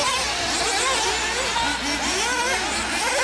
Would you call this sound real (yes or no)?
yes